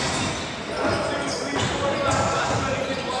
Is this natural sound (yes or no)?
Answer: yes